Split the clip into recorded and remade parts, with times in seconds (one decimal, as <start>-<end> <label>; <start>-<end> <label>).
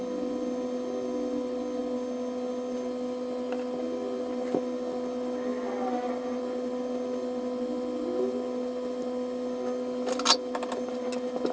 0.0-11.5 recorded